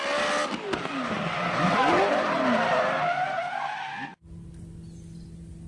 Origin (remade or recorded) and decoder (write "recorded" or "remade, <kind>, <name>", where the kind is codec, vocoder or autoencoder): recorded